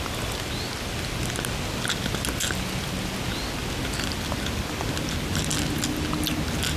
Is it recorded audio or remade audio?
recorded